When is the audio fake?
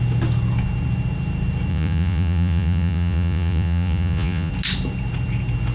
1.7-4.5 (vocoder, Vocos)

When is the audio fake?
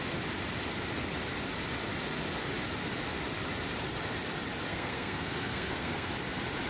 4.7-6.1 (codec, SNAC)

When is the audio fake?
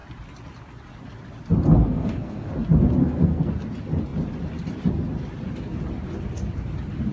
1.8-2.5 (codec, SNAC); 3.0-3.5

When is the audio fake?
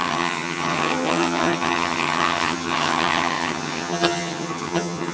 0.0-5.1 (vocoder, HiFi-GAN)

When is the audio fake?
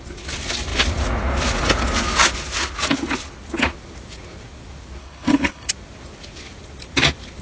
5.0-5.7 (codec, HILCodec)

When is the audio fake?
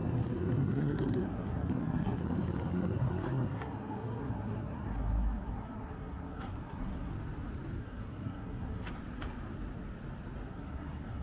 0.0-7.1 (codec, SNAC); 7.8-9.0; 10.5-11.2